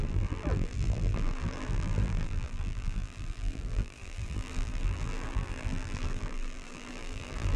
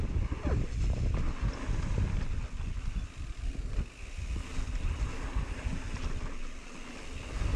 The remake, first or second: first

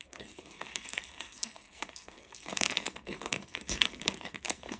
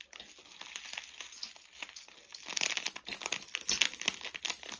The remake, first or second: first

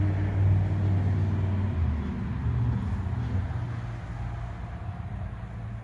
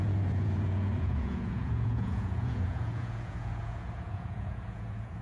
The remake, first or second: second